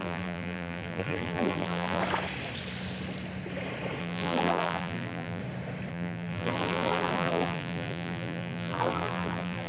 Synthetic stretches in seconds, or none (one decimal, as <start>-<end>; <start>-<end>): 0.0-2.0; 4.0-5.4; 5.9-9.7